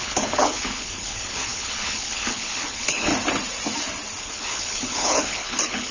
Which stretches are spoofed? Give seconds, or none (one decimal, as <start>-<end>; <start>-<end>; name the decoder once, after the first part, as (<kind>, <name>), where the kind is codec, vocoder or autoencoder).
0.0-3.1 (codec, HILCodec); 4.2-5.9